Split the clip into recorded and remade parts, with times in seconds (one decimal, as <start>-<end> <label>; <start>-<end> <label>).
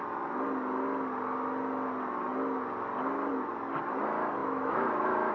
0.0-4.4 recorded; 4.4-5.3 remade